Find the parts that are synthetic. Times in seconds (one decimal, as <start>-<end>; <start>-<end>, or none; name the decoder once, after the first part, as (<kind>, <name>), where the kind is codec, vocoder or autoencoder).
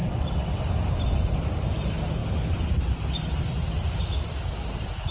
0.0-0.6 (vocoder, WaveNeXt)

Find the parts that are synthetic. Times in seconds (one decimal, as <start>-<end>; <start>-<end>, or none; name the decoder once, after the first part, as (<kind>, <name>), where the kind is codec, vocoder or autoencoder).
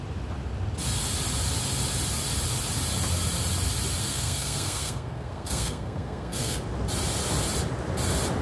4.0-6.6 (codec, SNAC)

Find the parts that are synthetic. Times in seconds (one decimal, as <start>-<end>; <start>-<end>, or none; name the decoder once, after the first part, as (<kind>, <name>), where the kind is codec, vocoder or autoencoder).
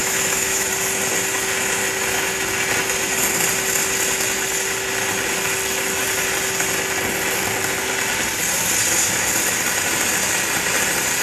0.0-0.7 (autoencoder, DAC-VAE)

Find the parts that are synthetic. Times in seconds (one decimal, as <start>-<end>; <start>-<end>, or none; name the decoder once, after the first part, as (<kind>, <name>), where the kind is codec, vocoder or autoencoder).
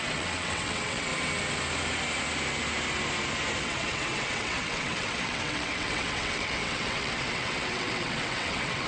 0.0-1.1 (vocoder, WaveNeXt); 3.6-8.9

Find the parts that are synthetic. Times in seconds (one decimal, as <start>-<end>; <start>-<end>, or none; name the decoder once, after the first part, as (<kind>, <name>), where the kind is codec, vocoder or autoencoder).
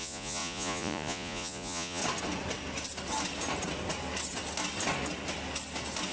0.0-2.0 (vocoder, Vocos)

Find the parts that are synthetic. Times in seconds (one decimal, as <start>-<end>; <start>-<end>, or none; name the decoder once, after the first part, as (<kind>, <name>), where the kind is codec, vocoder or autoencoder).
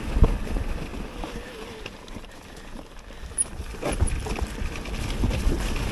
none